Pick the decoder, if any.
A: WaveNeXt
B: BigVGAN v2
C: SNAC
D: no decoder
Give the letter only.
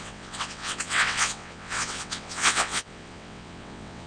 A